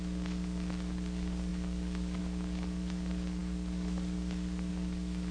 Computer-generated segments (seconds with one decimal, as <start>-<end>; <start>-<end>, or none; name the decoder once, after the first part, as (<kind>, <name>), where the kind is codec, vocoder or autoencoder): 0.0-5.3 (codec, DAC)